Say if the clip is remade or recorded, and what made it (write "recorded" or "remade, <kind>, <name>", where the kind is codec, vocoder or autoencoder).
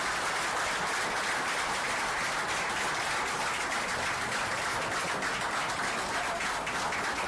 recorded